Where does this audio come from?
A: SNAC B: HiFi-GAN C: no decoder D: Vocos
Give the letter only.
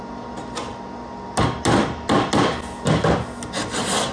C